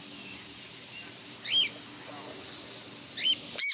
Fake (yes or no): no